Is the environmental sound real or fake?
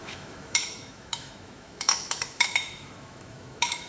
fake